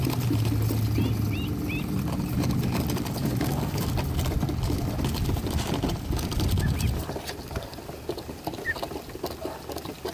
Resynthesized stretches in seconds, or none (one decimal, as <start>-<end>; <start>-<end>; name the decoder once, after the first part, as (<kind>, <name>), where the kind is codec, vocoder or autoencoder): 3.2-3.9 (codec, DAC)